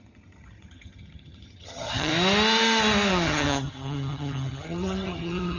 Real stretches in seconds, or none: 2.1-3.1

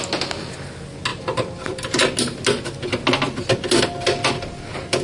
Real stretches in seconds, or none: 0.0-5.0

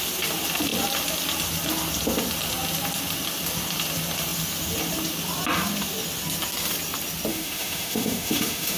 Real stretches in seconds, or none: 0.0-7.3

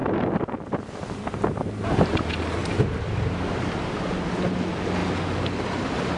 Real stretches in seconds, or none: 2.2-2.6; 3.4-6.2

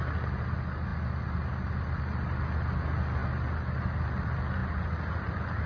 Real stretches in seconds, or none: 0.0-5.7

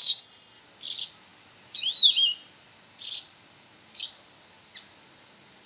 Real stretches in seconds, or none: 0.6-5.7

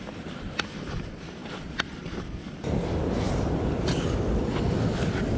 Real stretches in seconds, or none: 0.0-1.4; 4.6-5.4